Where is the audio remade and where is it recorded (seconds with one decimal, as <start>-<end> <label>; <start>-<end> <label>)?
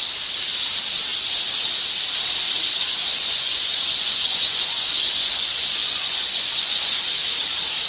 0.0-2.9 recorded; 2.9-7.0 remade; 7.0-7.9 recorded